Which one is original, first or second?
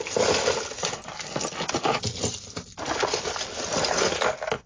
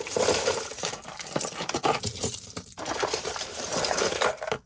first